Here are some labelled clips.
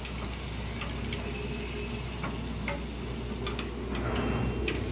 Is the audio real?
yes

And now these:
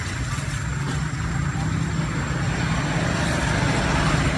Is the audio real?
yes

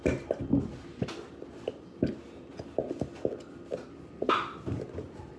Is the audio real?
yes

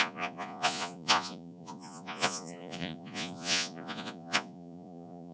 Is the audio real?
no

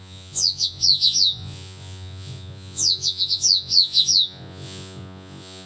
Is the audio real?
no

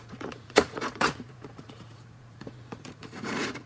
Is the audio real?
no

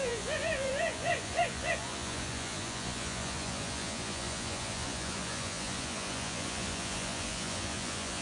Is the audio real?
no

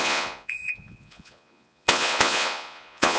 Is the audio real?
no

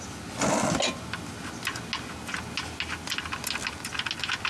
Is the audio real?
yes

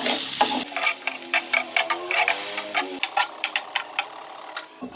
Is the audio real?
yes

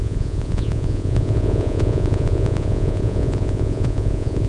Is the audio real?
no